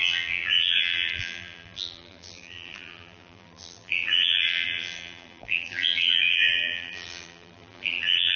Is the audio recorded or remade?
remade